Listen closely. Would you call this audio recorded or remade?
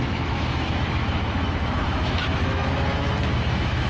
remade